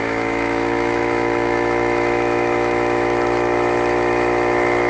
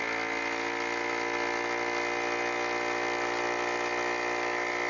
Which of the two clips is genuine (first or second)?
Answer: second